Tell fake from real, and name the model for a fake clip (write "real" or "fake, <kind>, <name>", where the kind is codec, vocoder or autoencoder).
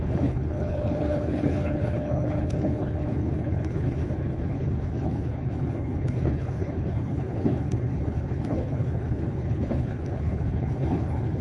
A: fake, codec, HILCodec